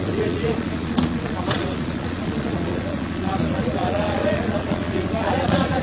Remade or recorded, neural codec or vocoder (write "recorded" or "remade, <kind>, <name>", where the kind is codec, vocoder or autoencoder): remade, vocoder, Vocos